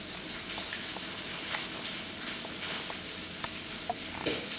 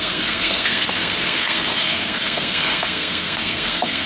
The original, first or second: first